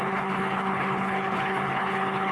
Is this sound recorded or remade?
remade